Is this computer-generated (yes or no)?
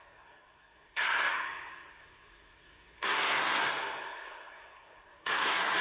yes